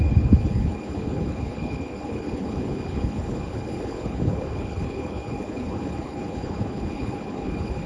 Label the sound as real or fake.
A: fake